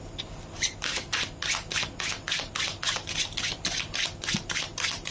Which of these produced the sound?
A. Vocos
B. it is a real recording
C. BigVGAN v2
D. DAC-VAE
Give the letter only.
B